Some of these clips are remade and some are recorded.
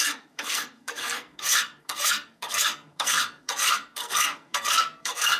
remade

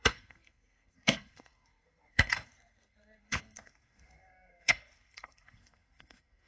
remade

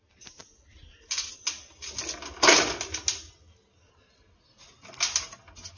recorded